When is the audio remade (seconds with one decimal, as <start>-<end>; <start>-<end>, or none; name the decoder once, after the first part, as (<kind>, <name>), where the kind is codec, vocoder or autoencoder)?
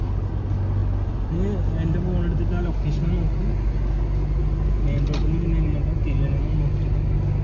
none